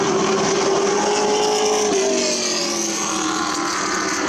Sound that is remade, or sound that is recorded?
recorded